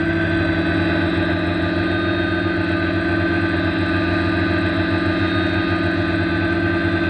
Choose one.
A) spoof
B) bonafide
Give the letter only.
B